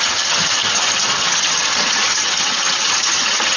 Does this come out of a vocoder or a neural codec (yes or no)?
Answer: yes